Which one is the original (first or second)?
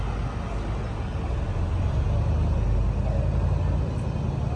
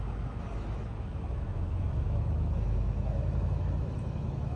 first